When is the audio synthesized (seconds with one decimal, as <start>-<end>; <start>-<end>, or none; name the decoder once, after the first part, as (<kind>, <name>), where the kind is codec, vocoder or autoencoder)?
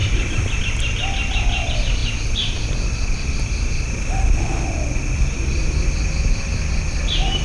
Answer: none